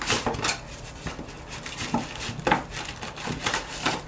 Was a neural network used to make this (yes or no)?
no